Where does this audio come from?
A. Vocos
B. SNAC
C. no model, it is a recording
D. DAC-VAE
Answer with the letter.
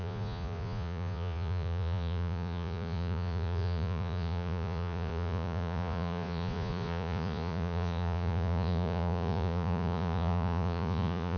A